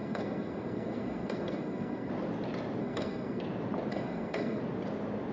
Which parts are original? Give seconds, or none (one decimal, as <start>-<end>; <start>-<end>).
2.1-2.8; 3.4-3.9; 4.6-5.3

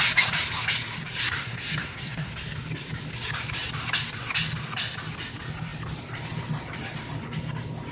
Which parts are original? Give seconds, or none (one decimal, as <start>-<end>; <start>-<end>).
0.0-1.4; 2.3-7.9